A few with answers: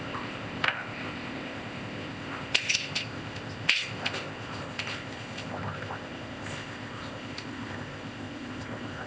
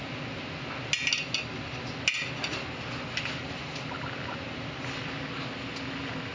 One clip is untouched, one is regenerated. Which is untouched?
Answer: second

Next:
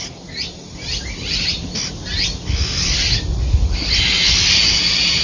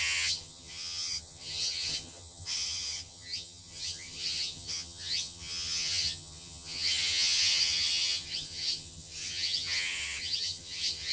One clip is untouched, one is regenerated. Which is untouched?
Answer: first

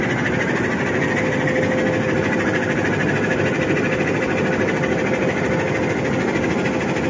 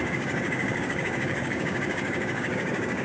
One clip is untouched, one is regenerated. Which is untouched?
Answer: first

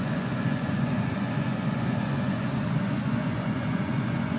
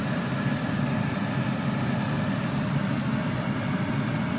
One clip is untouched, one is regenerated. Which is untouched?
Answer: second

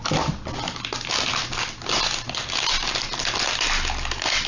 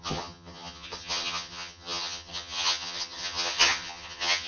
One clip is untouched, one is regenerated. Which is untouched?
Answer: first